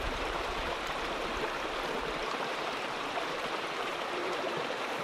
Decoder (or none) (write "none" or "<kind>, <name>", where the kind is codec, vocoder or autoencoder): vocoder, BigVGAN v2